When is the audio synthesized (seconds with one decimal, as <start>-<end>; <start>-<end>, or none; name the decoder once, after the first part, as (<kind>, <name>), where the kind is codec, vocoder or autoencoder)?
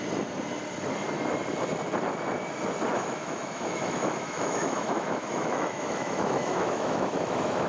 2.9-7.7 (autoencoder, DAC-VAE)